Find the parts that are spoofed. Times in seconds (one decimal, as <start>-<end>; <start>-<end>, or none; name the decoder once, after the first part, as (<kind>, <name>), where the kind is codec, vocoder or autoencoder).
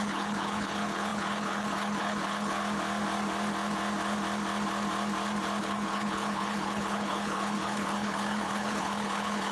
0.0-2.6 (codec, HILCodec); 5.6-9.5